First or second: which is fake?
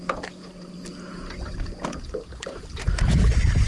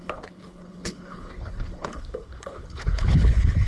second